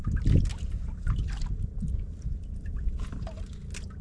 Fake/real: real